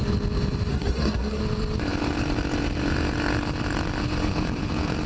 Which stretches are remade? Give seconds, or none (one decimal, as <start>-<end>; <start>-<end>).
0.7-1.4